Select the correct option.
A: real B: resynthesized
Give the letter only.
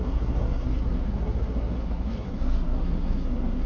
B